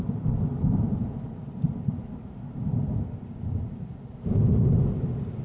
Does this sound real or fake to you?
real